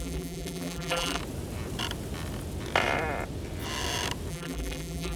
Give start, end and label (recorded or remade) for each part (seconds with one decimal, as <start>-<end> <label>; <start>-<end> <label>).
0.0-1.2 remade; 1.2-4.3 recorded; 4.3-5.2 remade